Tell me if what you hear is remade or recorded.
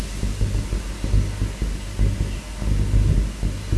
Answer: recorded